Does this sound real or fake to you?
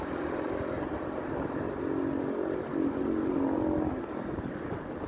real